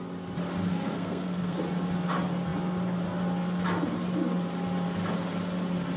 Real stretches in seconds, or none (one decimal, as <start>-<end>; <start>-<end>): 0.0-0.7; 1.6-6.0